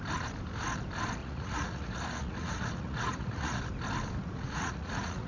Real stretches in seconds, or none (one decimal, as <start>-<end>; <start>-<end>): 0.0-1.2; 3.6-4.2